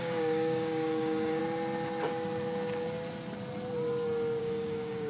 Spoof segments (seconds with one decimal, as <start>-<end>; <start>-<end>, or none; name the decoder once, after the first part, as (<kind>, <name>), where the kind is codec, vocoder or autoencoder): 0.0-1.4 (codec, DAC); 4.4-5.1